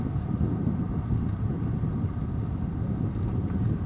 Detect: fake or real real